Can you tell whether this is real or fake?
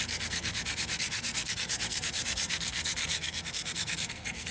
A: fake